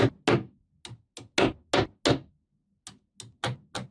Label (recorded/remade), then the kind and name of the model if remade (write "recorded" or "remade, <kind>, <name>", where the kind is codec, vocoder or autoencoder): recorded